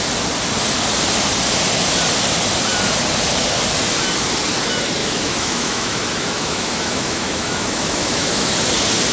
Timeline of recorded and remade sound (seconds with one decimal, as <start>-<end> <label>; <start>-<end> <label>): 0.0-5.0 recorded; 5.0-8.5 remade; 8.5-9.1 recorded